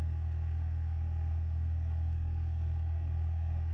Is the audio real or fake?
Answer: fake